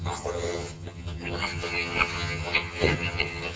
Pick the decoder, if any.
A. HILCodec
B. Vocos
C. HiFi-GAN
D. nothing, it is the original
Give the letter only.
C